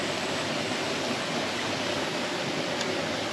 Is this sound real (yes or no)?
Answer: yes